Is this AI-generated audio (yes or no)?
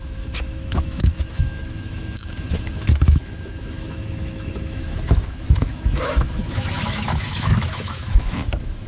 yes